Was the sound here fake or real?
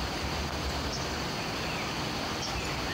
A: real